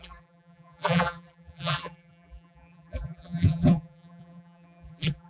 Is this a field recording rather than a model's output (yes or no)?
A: no